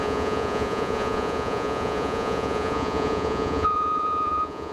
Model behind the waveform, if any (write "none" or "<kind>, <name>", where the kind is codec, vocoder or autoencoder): vocoder, Vocos